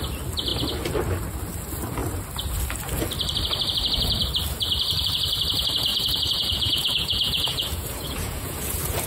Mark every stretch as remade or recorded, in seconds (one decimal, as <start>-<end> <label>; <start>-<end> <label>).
0.0-5.9 recorded; 5.9-9.1 remade